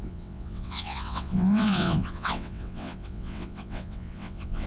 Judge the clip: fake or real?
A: fake